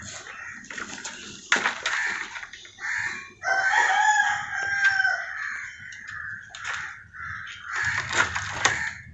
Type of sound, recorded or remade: recorded